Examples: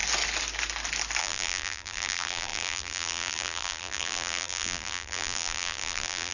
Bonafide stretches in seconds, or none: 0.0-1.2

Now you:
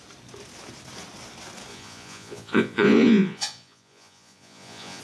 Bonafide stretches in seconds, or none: 0.0-1.7

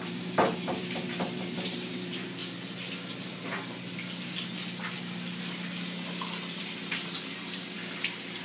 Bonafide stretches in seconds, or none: 2.4-6.6; 7.8-8.4

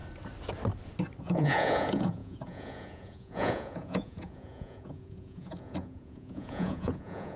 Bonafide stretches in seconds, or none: 0.0-1.2

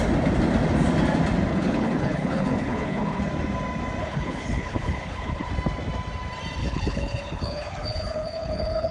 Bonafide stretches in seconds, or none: 0.0-1.5; 3.2-4.0; 5.5-6.6

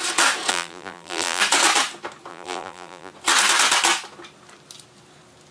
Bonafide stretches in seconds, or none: 0.0-0.5; 1.4-2.3; 3.1-5.5

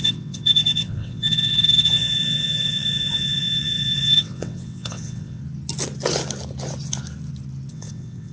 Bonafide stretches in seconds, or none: 5.4-7.7